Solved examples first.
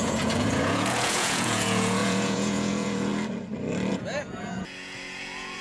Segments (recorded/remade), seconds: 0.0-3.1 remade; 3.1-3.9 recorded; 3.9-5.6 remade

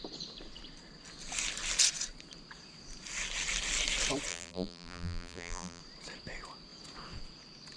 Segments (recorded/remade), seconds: 0.0-4.3 recorded; 4.3-5.8 remade; 5.8-7.8 recorded

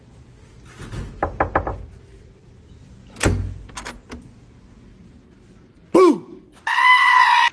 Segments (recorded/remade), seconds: 0.0-7.5 recorded

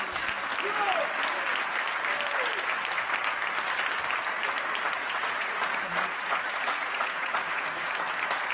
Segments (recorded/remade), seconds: 0.0-5.0 recorded; 5.0-8.0 remade; 8.0-8.5 recorded

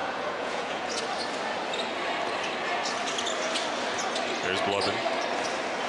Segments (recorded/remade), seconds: 0.0-1.0 remade; 1.0-5.9 recorded

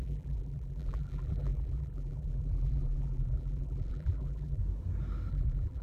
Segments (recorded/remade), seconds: 0.0-4.6 remade; 4.6-5.3 recorded; 5.3-5.8 remade

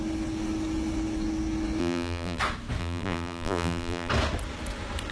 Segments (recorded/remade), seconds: 0.0-1.8 recorded; 1.8-2.4 remade; 2.4-2.8 recorded; 2.8-4.1 remade; 4.1-5.1 recorded